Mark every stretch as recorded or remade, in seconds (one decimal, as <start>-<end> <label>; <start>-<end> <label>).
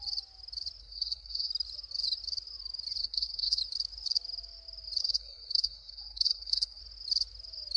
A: 0.0-0.8 recorded; 0.8-1.5 remade; 1.5-3.0 recorded; 3.0-3.6 remade; 3.6-5.0 recorded; 5.0-6.8 remade; 6.8-7.8 recorded